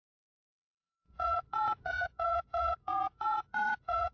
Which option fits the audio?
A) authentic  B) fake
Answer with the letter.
B